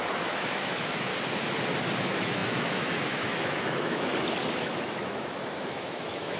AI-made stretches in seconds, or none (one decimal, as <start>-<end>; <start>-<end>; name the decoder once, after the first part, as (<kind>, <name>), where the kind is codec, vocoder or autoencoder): 0.0-1.1 (autoencoder, DAC-VAE); 2.0-4.1; 4.6-6.4